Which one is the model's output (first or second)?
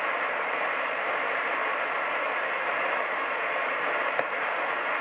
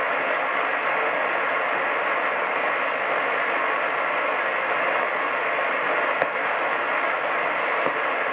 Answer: first